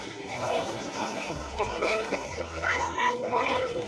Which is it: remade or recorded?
remade